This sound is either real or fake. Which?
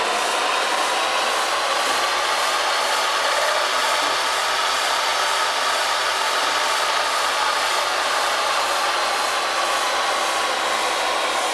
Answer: real